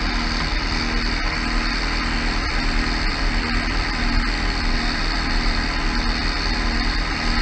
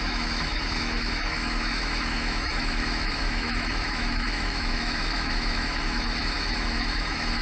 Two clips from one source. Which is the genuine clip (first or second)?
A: first